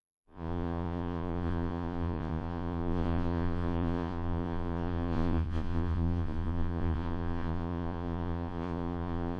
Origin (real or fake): fake